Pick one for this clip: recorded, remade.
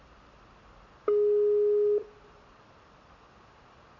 recorded